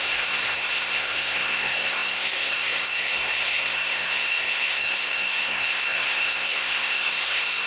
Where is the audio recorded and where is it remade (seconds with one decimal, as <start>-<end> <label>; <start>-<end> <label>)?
0.0-7.7 remade